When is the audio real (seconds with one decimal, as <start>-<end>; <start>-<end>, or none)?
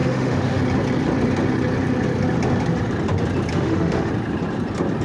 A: 0.6-3.5; 4.1-5.0